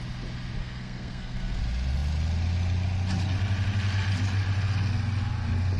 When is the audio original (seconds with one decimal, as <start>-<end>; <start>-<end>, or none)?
0.0-0.6; 1.6-5.8